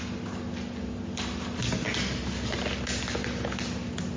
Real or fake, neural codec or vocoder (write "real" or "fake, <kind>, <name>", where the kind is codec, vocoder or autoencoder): real